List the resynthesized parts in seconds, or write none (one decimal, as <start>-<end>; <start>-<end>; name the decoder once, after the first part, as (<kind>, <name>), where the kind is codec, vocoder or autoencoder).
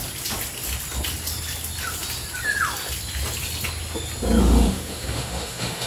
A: 4.4-5.9 (autoencoder, DAC-VAE)